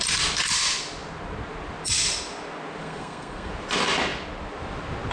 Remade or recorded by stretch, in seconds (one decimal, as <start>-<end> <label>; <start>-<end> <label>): 0.0-2.8 recorded; 2.8-3.5 remade; 3.5-5.1 recorded